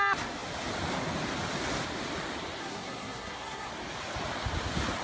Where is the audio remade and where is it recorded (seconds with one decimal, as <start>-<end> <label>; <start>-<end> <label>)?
0.0-2.6 recorded; 2.6-3.7 remade; 3.7-5.0 recorded